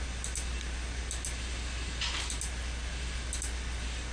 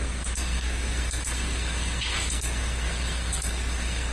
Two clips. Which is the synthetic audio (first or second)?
second